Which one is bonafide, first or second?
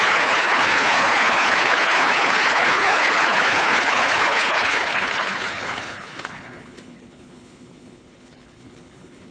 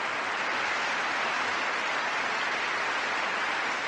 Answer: second